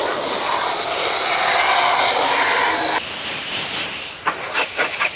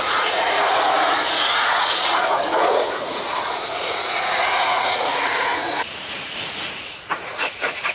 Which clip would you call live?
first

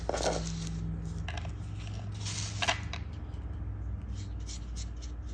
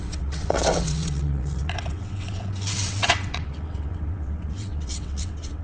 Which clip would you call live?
first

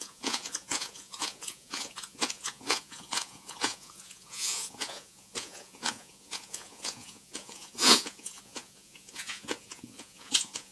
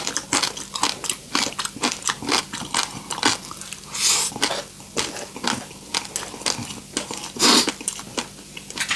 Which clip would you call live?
second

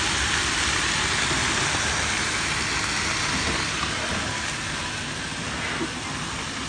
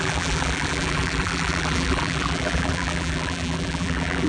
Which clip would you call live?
first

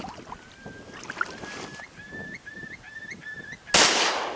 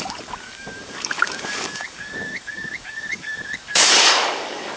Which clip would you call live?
first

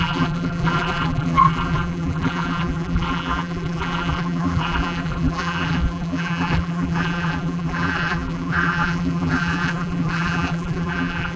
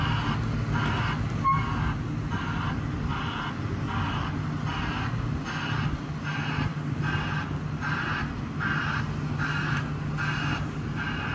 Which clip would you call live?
second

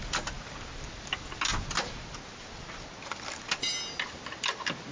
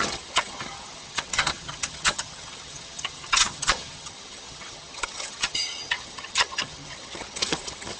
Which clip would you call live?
first